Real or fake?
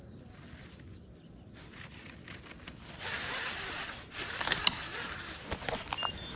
real